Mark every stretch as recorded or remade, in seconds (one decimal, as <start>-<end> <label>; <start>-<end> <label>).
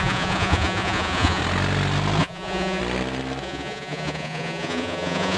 0.0-1.4 remade; 1.4-2.2 recorded; 2.2-2.8 remade; 2.8-3.4 recorded; 3.4-5.4 remade